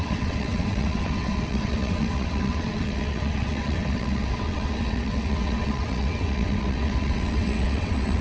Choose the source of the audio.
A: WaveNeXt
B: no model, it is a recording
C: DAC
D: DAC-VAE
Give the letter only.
A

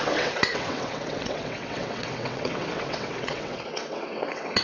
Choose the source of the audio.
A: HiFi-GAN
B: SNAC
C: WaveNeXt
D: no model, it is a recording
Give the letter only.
C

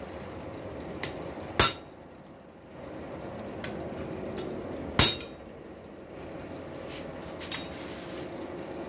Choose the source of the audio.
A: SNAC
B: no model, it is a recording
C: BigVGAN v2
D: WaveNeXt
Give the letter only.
B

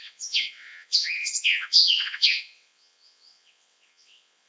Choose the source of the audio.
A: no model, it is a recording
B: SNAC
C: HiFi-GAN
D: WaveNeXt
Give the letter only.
D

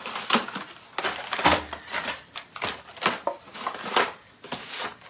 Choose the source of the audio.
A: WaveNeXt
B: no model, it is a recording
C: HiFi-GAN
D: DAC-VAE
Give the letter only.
B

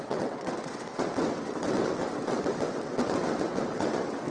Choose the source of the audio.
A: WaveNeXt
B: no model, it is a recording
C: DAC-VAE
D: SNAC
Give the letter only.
A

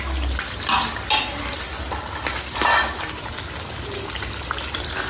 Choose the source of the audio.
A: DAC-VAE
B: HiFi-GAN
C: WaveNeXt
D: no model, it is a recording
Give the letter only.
D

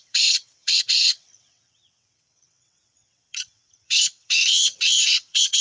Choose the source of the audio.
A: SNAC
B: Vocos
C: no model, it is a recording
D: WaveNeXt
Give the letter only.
D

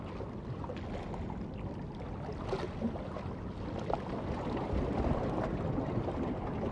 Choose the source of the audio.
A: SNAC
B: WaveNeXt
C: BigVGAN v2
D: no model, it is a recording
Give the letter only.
D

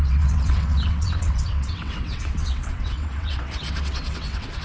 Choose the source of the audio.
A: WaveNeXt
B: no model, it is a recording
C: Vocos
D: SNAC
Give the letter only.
A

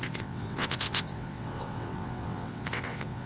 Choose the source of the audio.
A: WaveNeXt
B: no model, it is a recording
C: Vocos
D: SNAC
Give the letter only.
A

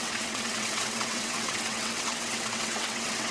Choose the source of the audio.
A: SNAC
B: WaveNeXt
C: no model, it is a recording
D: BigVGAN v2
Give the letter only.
B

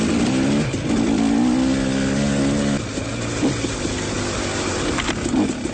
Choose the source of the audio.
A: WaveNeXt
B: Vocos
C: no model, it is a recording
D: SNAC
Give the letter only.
C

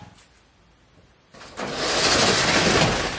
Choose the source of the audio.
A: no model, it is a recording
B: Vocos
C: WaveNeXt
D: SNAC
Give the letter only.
A